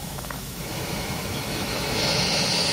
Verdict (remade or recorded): remade